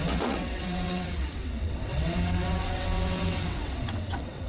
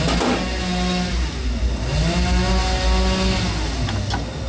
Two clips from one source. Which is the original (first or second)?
second